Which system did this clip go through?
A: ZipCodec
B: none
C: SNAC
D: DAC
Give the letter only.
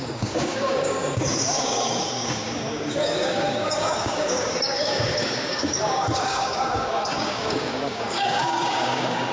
D